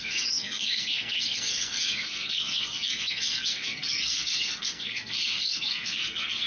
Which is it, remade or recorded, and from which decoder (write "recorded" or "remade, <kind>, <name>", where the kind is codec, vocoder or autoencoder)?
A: remade, codec, SNAC